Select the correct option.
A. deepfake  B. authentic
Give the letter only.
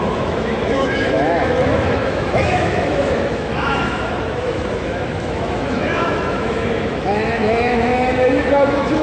A